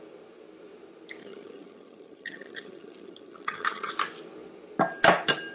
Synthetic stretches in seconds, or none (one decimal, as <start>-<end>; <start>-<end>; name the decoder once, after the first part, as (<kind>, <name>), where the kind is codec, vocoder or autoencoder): 1.2-3.9 (vocoder, HiFi-GAN)